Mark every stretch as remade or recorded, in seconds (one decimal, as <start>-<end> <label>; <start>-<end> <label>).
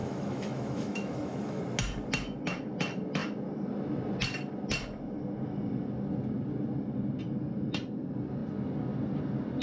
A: 0.0-1.6 remade; 1.6-9.6 recorded